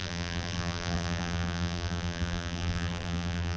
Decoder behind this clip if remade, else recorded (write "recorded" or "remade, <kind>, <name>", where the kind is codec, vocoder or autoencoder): remade, vocoder, BigVGAN v2